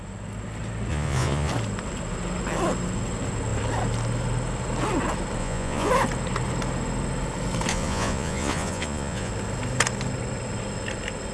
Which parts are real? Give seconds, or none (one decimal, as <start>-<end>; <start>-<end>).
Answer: 0.0-0.9; 1.5-5.4; 5.9-7.7; 9.3-11.3